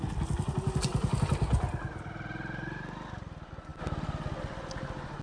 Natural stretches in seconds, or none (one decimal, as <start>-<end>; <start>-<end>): 0.0-5.2